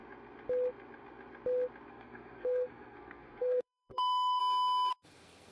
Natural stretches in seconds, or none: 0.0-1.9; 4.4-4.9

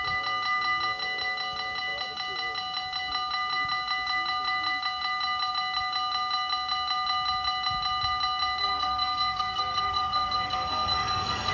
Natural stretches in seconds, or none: 0.0-8.6

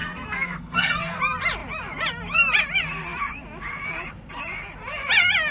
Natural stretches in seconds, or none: 1.2-5.5

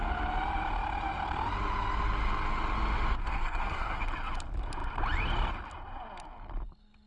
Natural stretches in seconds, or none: 0.0-3.2; 4.0-7.1